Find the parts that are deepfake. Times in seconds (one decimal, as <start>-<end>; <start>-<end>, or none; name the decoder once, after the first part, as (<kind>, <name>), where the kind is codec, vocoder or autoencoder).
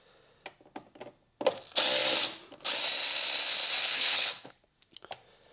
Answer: 3.8-4.5 (codec, HILCodec)